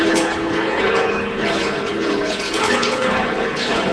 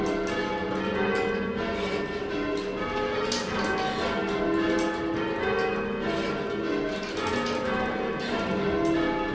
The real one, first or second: second